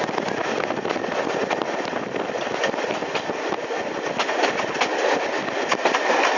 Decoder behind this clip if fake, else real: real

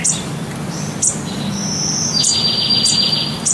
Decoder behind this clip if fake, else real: real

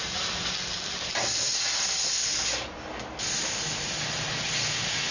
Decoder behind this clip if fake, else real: real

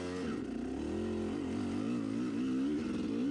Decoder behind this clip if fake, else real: real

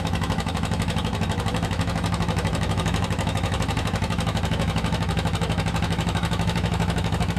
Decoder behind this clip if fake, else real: fake, autoencoder, DAC-VAE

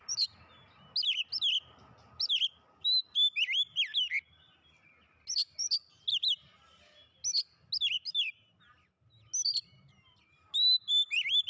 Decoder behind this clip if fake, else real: real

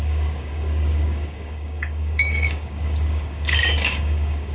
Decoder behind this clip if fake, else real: fake, codec, DAC